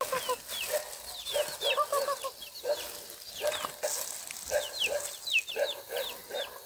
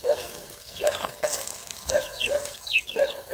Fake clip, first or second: second